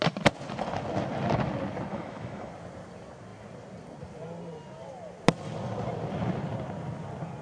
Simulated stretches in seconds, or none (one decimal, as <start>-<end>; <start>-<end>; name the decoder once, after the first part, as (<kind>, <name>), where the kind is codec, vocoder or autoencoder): 1.9-2.5 (autoencoder, DAC-VAE)